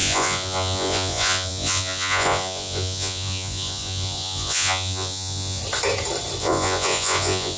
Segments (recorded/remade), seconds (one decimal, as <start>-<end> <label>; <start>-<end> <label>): 0.0-5.6 remade; 5.6-6.4 recorded; 6.4-7.6 remade